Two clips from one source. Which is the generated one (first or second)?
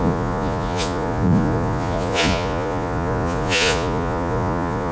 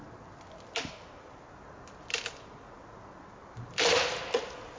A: first